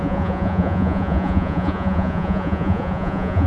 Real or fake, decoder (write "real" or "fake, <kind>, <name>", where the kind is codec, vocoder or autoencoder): fake, vocoder, Vocos